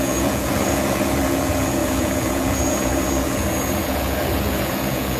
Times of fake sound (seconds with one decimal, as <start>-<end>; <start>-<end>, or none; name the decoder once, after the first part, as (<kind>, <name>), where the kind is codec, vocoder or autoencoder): 0.0-5.2 (vocoder, Vocos)